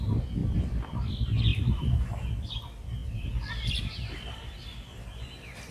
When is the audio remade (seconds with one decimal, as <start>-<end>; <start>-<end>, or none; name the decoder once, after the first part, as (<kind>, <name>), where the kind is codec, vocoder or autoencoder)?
0.4-1.1 (vocoder, BigVGAN v2); 1.5-2.0; 3.0-3.8